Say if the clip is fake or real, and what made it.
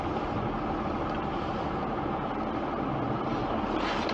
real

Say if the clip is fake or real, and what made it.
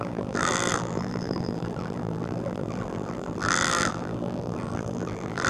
fake, vocoder, BigVGAN v2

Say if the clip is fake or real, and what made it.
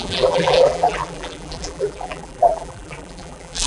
fake, vocoder, BigVGAN v2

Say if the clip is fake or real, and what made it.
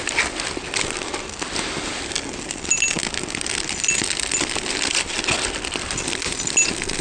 real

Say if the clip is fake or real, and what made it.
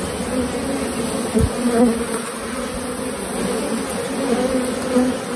real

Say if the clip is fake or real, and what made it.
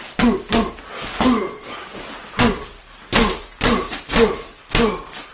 real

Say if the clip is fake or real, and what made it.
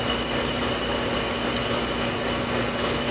real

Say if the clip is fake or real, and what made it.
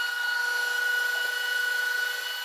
real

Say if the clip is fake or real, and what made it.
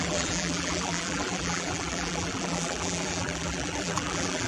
fake, vocoder, BigVGAN v2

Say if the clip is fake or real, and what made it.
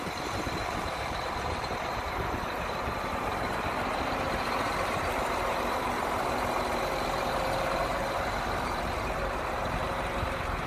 fake, vocoder, BigVGAN v2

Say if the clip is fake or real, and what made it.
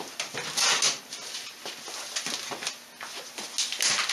real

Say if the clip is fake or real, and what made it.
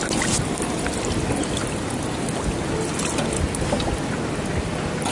real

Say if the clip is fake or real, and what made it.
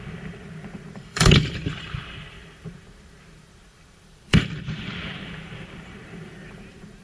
fake, vocoder, BigVGAN v2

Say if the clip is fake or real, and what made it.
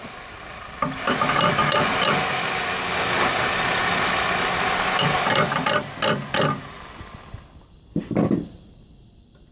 real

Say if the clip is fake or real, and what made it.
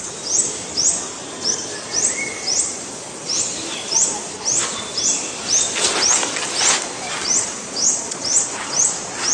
fake, vocoder, BigVGAN v2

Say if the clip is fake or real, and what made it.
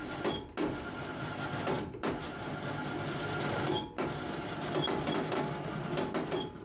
real